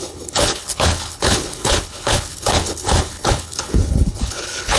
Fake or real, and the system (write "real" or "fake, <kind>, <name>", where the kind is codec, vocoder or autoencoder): fake, codec, HILCodec